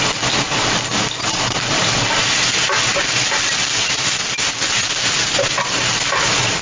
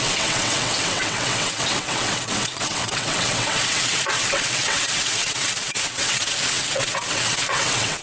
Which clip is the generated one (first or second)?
second